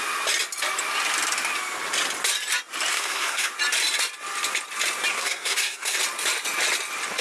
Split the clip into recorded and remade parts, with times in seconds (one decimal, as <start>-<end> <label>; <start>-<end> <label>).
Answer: 0.0-2.9 recorded; 2.9-3.5 remade; 3.5-5.1 recorded; 5.1-6.0 remade; 6.0-7.2 recorded